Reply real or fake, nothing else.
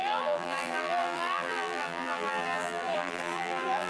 fake